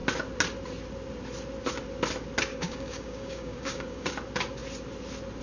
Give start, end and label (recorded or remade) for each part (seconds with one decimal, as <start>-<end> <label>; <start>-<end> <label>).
0.0-2.5 recorded; 2.5-4.1 remade; 4.1-5.4 recorded